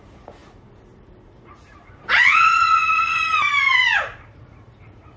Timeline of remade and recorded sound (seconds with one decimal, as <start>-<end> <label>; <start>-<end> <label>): 0.0-5.2 remade